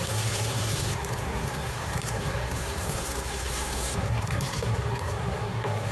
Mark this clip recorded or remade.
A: remade